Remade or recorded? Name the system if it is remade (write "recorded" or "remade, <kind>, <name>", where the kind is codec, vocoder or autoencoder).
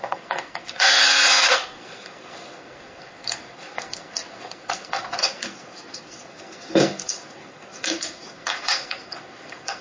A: remade, codec, SNAC